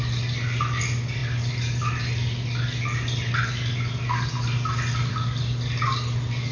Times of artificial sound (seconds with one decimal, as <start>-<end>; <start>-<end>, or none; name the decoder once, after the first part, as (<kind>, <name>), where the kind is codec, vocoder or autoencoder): none